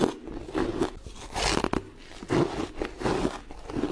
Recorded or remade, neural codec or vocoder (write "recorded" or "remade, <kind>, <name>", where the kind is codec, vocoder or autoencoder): recorded